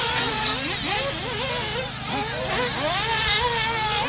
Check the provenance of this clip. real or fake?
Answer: real